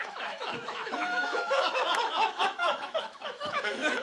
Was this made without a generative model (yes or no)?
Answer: no